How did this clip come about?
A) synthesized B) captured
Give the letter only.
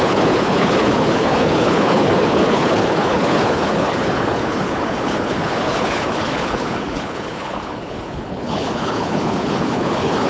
A